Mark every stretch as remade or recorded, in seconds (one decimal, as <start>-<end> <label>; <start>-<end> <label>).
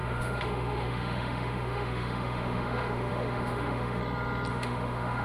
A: 0.0-4.0 remade; 4.0-4.5 recorded; 4.5-5.2 remade